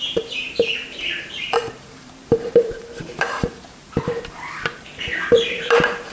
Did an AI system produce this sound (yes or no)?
yes